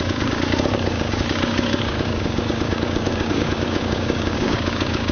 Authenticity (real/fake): fake